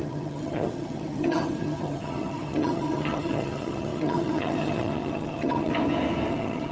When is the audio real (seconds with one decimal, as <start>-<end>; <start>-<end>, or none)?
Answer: 5.7-6.3